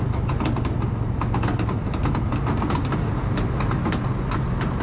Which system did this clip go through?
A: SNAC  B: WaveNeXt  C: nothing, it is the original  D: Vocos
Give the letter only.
C